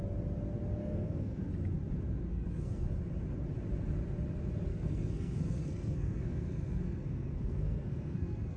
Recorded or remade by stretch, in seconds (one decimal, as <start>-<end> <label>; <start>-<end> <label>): 0.0-0.8 recorded; 0.8-1.5 remade; 1.5-2.3 recorded; 2.3-2.9 remade; 2.9-4.7 recorded; 4.7-8.6 remade